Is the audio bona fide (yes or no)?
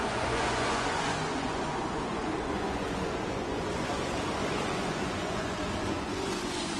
no